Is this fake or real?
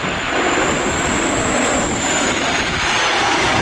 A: real